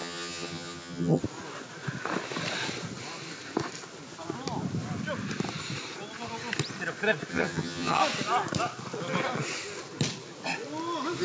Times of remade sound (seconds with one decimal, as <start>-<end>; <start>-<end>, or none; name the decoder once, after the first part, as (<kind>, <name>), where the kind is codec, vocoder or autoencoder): 0.0-1.2 (vocoder, HiFi-GAN); 7.3-8.0